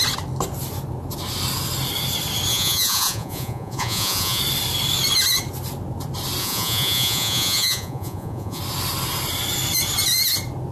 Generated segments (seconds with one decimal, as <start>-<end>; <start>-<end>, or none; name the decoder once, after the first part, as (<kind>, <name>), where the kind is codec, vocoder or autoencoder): 2.5-4.4 (vocoder, Vocos); 6.4-8.6